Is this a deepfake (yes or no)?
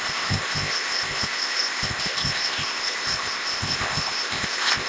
yes